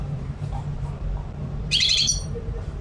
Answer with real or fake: fake